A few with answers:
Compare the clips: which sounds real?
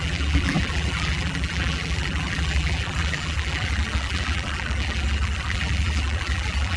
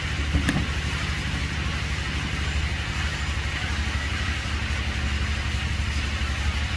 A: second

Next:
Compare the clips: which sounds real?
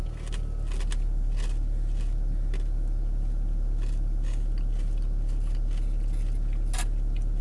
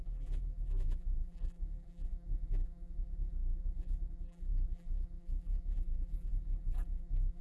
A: first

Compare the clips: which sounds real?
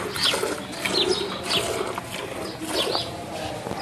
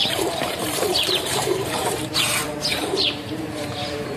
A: first